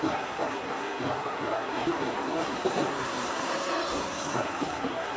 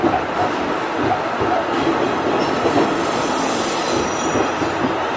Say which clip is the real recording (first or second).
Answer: second